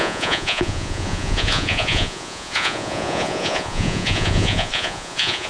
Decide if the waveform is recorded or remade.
remade